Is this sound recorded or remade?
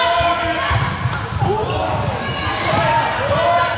recorded